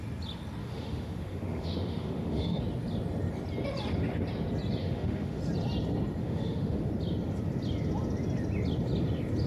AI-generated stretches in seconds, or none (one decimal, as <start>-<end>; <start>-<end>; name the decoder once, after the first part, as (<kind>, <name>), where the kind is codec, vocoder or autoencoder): 0.6-2.6 (autoencoder, DAC-VAE); 4.8-5.4; 6.2-6.9